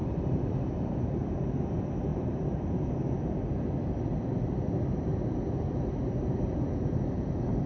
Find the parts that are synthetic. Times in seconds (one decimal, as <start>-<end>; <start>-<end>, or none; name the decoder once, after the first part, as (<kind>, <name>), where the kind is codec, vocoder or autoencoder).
0.0-1.3 (vocoder, BigVGAN v2); 2.1-2.9